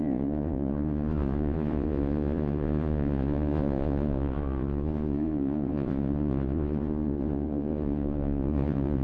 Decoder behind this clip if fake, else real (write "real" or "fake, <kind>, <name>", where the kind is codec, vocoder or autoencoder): fake, vocoder, Vocos